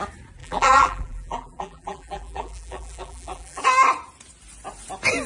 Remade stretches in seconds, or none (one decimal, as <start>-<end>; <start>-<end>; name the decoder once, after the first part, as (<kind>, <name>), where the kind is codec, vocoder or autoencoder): 0.4-3.6 (vocoder, BigVGAN v2)